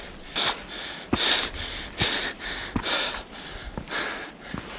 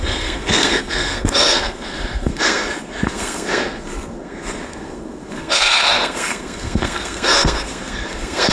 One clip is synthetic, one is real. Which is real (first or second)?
first